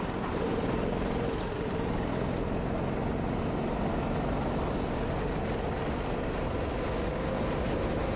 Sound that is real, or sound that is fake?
real